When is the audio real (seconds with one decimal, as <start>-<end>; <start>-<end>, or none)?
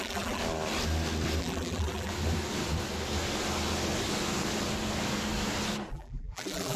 0.4-1.4; 2.1-5.9